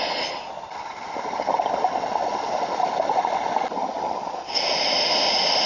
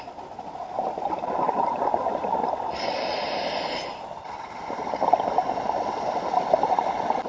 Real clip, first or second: first